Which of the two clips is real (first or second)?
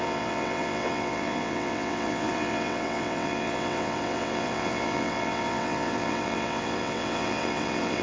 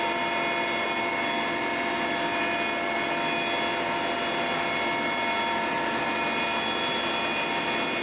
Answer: second